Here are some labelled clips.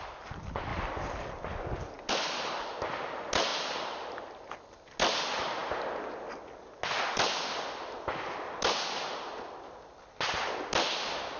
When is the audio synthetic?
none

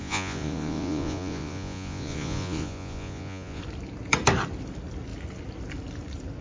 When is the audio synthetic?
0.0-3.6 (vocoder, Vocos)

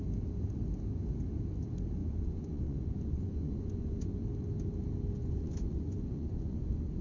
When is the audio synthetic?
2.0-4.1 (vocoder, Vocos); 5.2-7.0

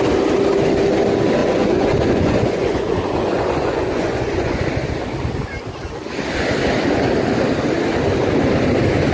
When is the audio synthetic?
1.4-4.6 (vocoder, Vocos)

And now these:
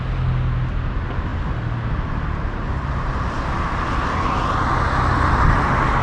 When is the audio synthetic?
none

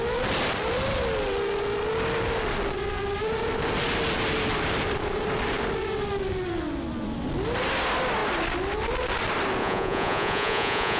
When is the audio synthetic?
9.6-11.0 (vocoder, Vocos)